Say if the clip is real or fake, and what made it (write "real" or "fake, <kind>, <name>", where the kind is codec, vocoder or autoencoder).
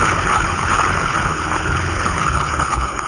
fake, codec, HILCodec